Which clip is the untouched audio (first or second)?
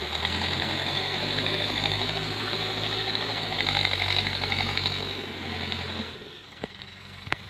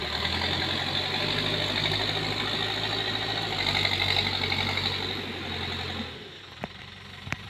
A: second